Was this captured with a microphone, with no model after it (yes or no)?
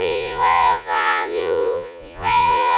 no